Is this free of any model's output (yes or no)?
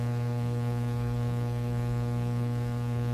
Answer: no